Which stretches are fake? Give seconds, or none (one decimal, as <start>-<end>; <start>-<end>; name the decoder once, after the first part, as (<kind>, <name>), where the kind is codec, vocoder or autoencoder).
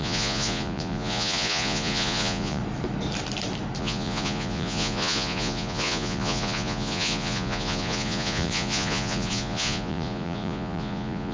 0.0-2.6 (vocoder, Vocos); 3.8-11.3